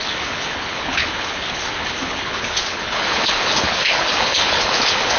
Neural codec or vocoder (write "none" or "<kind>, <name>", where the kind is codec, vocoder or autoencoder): codec, HILCodec